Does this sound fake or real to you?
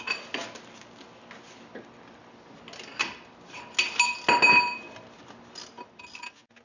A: real